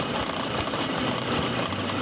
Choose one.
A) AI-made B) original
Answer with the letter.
A